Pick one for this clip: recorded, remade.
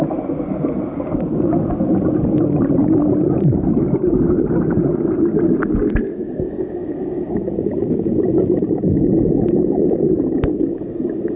recorded